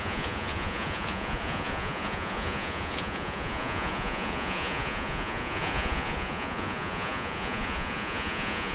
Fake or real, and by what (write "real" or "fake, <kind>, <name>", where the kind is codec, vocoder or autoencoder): fake, vocoder, Vocos